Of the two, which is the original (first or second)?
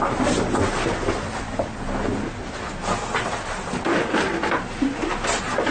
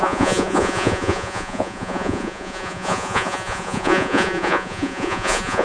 first